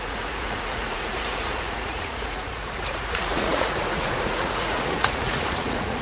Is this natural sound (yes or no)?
no